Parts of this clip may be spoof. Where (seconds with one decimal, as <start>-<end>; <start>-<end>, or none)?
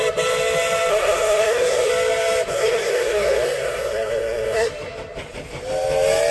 0.9-1.9; 2.5-4.7